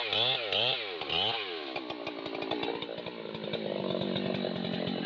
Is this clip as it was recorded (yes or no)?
yes